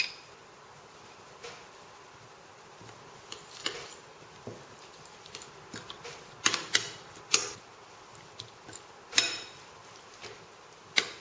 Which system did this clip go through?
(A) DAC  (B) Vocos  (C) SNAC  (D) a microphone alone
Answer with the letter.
D